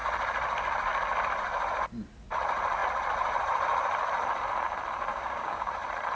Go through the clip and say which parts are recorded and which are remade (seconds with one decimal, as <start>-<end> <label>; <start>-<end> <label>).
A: 0.0-5.1 recorded; 5.1-5.7 remade; 5.7-6.2 recorded

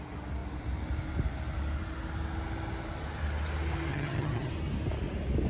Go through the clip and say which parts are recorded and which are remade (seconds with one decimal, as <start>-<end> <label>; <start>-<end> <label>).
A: 0.0-3.9 recorded; 3.9-4.5 remade; 4.5-5.5 recorded

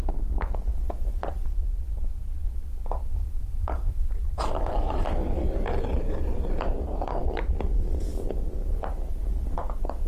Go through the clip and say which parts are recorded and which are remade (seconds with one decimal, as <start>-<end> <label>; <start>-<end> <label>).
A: 0.0-3.2 recorded; 3.2-7.2 remade; 7.2-10.1 recorded

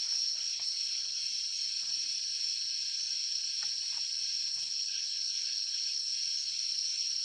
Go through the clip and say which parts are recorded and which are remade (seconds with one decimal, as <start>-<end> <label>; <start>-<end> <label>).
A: 0.0-1.2 remade; 1.2-4.5 recorded; 4.5-6.1 remade; 6.1-7.2 recorded

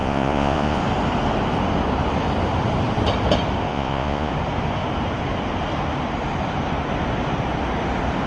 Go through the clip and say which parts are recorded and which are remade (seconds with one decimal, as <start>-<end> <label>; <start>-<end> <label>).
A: 0.0-0.8 remade; 0.8-3.7 recorded; 3.7-4.3 remade; 4.3-8.3 recorded